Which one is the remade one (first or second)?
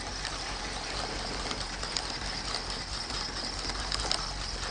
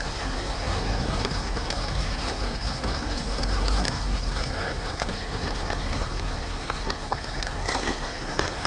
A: second